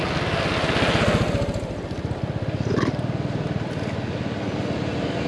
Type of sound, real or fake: real